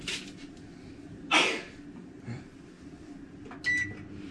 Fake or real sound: real